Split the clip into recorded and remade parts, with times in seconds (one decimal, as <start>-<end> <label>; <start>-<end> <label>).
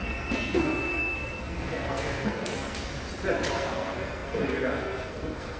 0.0-2.9 remade; 2.9-3.5 recorded; 3.5-5.6 remade